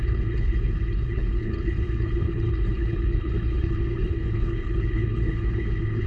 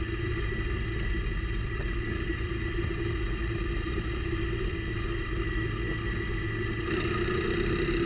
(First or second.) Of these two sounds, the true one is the second